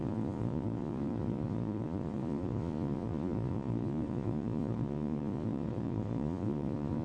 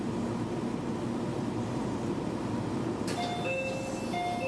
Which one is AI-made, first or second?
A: first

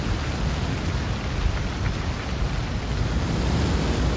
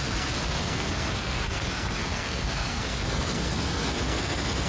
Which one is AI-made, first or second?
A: second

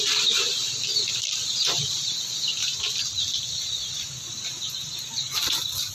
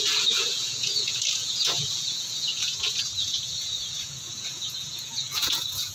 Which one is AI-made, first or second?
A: second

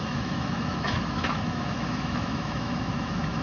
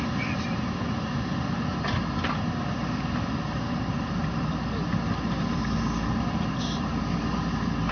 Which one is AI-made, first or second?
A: first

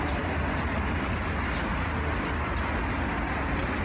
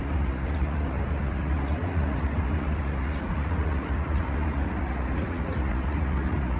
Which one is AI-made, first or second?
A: second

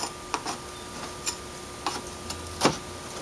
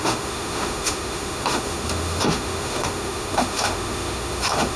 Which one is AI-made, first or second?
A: second